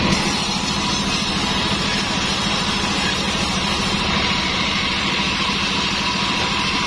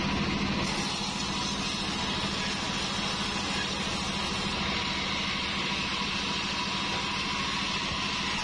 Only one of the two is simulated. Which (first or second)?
first